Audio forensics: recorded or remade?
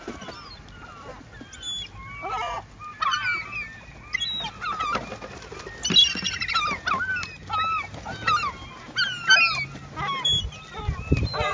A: recorded